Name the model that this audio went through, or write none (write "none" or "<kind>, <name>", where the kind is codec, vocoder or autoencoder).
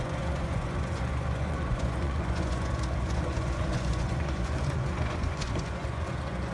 vocoder, Vocos